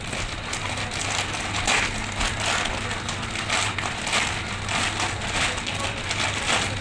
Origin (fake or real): real